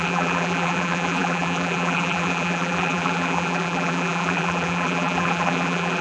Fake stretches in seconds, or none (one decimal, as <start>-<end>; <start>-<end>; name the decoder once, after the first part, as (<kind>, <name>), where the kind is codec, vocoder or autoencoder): 0.0-6.0 (vocoder, BigVGAN v2)